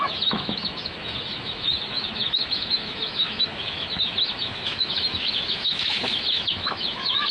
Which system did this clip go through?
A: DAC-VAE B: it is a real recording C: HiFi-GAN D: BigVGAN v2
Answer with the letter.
A